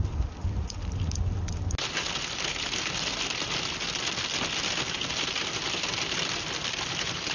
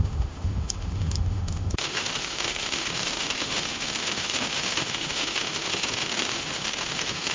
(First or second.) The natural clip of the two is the first